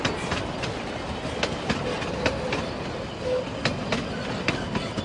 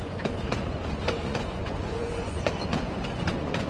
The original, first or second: first